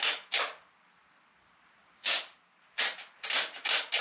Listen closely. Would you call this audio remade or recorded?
recorded